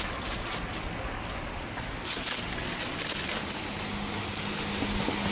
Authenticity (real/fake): real